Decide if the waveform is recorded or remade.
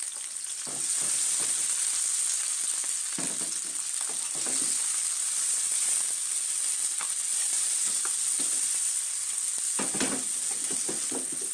recorded